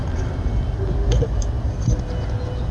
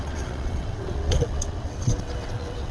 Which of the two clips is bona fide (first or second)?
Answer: first